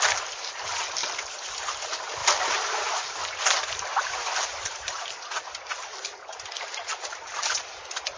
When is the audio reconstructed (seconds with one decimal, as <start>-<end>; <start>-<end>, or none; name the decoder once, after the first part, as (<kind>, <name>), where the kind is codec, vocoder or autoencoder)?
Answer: 2.2-5.0 (vocoder, BigVGAN v2); 5.7-6.9